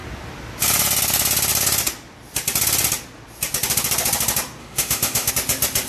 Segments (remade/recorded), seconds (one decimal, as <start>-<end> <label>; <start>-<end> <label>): 0.0-4.6 recorded; 4.6-5.3 remade; 5.3-5.9 recorded